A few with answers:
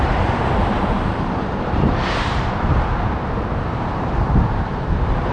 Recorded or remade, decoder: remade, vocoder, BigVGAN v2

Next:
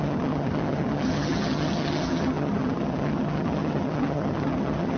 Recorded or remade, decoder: remade, vocoder, HiFi-GAN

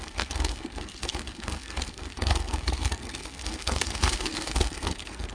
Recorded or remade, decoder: remade, codec, SNAC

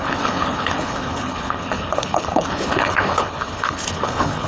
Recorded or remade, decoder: remade, codec, HILCodec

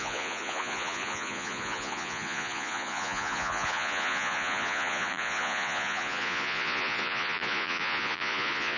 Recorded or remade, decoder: remade, vocoder, Vocos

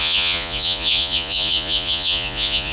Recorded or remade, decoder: remade, vocoder, Vocos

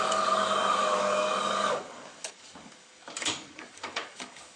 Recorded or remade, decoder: remade, codec, DAC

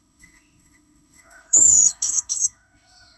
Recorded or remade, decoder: remade, autoencoder, DAC-VAE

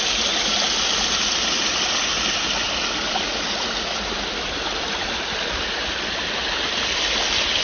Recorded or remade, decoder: recorded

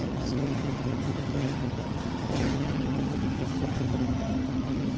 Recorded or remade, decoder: remade, vocoder, HiFi-GAN